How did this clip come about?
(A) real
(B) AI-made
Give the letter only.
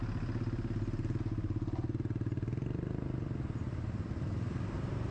A